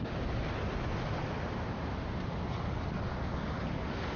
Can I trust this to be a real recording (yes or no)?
yes